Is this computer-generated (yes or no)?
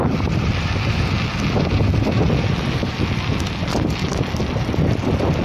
no